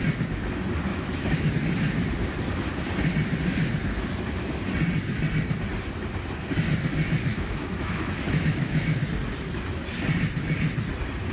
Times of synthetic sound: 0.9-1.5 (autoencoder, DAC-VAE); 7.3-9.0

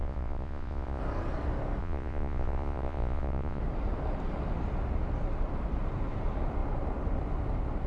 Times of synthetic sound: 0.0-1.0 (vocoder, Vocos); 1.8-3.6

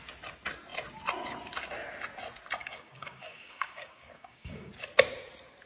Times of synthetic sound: 2.6-4.7 (codec, DAC)

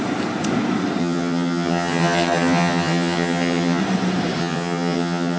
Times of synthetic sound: 1.0-3.8 (vocoder, HiFi-GAN); 4.4-5.4